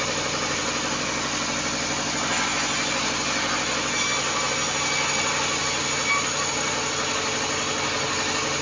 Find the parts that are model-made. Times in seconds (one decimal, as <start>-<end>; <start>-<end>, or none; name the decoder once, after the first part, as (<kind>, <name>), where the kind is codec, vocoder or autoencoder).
none